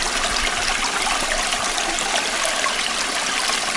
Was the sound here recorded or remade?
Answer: recorded